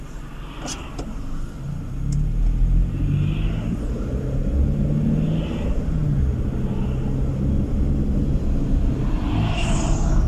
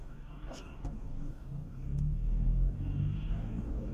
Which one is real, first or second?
first